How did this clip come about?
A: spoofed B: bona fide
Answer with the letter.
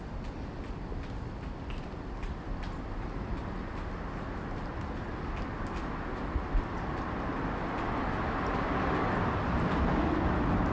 B